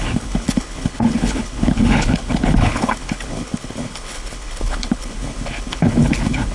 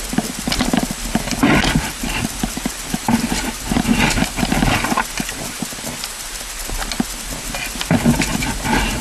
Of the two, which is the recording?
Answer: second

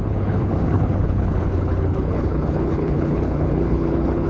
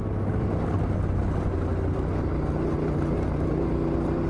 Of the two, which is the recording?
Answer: second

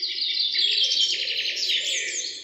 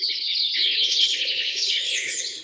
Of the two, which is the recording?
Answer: first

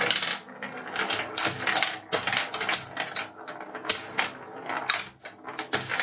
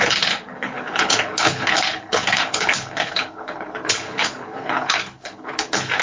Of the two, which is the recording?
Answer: first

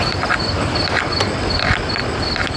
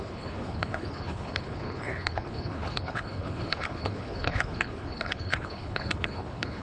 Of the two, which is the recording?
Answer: first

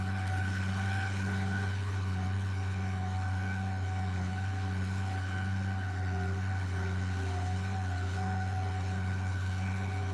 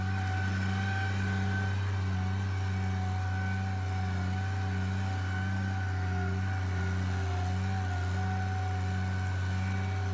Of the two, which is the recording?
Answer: second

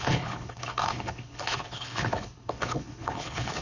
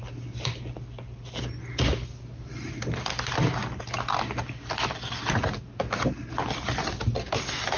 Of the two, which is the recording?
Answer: second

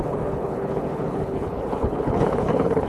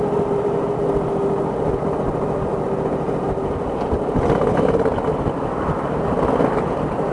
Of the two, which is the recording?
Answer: second